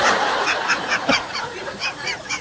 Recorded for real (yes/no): no